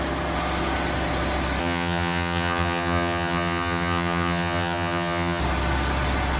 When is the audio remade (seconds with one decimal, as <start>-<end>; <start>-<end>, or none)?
1.6-5.4